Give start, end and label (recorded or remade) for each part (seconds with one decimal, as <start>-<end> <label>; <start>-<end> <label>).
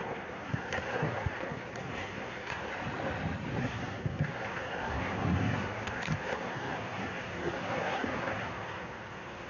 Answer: 0.0-2.7 remade; 2.7-3.6 recorded; 3.6-9.5 remade